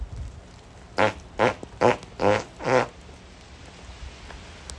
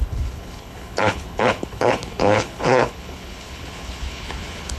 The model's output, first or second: second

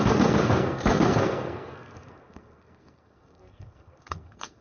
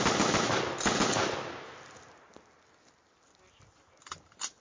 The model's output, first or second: first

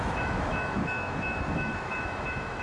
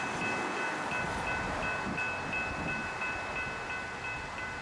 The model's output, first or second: first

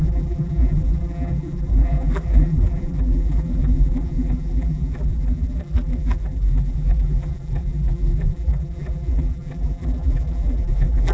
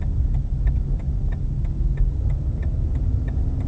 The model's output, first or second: first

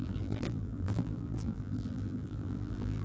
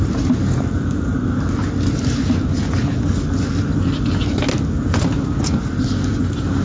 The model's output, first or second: first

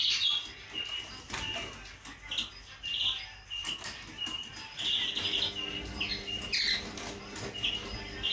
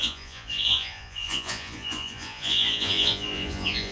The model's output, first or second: second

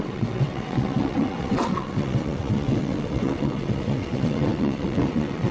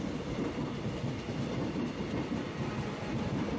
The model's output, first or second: first